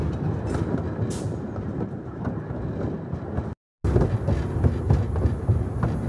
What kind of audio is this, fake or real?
real